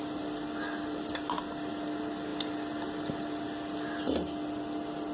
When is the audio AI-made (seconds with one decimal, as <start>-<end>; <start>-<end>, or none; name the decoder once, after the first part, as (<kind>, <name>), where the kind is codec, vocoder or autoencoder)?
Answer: none